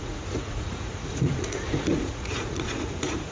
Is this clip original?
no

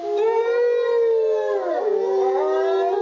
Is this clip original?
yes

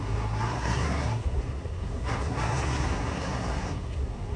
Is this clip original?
no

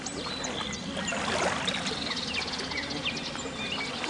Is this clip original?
yes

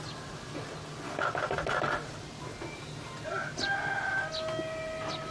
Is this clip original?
yes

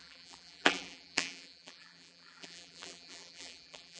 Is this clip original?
no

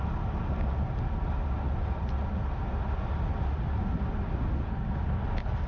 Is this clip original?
yes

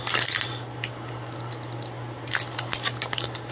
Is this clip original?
yes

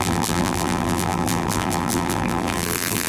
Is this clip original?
no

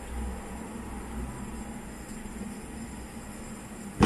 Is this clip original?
yes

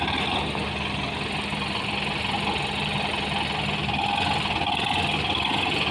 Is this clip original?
yes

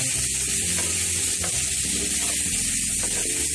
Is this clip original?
yes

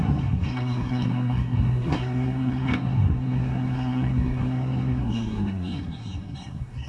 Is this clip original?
no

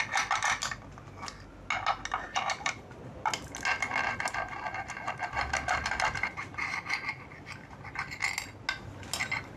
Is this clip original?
yes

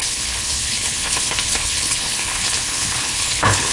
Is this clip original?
no